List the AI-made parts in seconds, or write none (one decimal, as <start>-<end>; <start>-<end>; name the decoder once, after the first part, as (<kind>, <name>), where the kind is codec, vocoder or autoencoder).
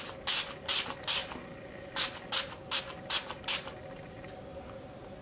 none